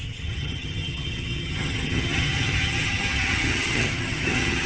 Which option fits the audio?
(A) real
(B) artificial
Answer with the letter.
B